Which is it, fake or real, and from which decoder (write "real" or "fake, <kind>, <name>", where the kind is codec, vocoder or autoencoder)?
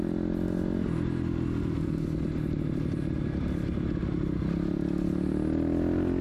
real